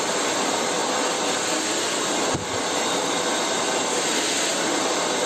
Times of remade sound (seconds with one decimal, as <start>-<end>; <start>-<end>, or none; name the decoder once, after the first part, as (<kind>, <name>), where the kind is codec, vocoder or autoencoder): none